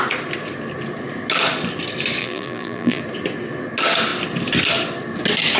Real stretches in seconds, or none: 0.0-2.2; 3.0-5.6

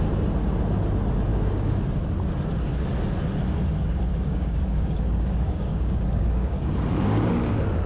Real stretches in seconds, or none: 0.0-1.3; 1.8-4.1; 7.3-7.9

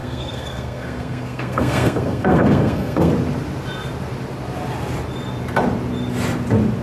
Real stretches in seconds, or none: 3.1-6.8

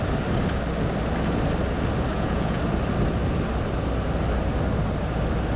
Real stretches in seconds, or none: 0.0-2.1; 2.6-5.6

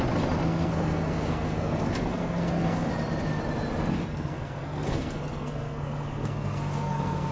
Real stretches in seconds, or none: 0.0-0.4; 2.9-4.1

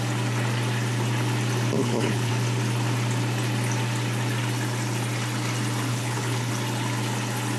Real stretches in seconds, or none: 0.0-1.8; 2.3-5.9; 6.5-7.6